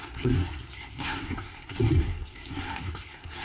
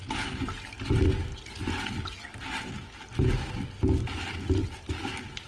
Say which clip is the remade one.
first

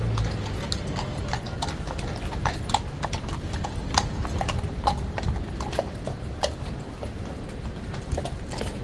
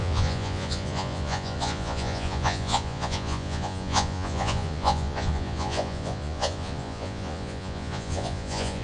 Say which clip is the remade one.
second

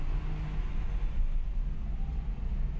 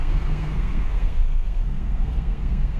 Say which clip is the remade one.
second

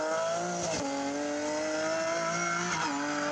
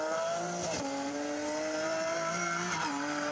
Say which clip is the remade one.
second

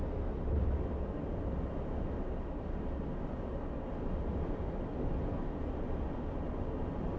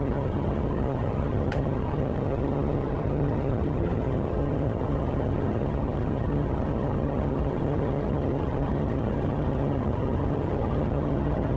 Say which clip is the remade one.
second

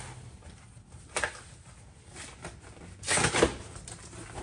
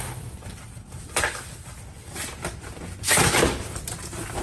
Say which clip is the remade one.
second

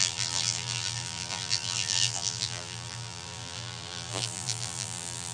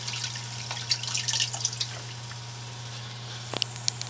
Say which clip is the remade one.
first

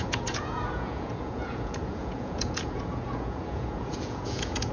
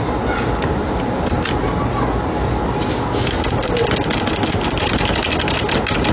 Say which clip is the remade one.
first